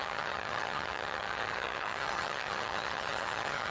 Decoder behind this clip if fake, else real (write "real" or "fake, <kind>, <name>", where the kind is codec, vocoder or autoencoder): fake, vocoder, HiFi-GAN